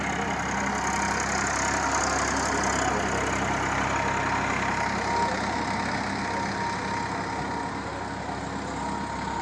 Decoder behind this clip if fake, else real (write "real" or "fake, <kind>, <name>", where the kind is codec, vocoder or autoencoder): real